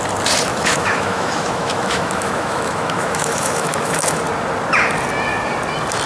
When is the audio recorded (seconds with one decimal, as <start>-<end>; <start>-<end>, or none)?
0.0-0.5; 4.2-6.1